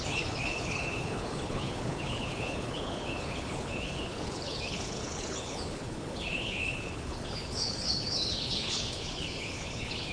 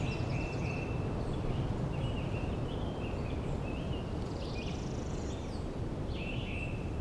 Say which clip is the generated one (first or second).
first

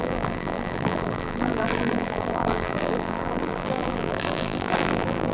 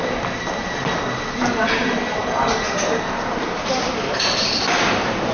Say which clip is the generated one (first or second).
first